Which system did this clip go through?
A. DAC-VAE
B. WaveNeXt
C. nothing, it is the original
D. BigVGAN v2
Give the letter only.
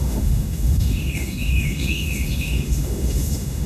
A